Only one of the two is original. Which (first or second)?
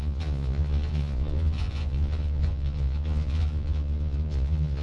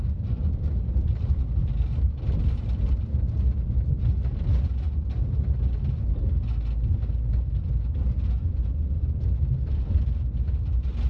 second